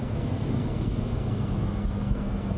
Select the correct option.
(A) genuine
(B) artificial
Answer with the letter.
B